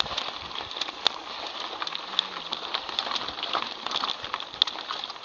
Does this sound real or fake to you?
real